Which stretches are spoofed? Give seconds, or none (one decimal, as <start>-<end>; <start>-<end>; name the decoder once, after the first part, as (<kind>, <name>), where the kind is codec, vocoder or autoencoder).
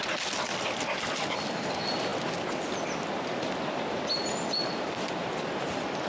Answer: none